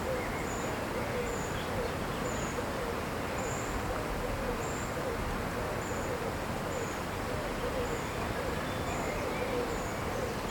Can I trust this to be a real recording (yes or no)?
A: yes